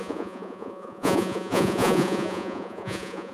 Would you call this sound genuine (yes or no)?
no